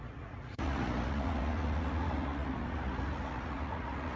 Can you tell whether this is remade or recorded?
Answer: remade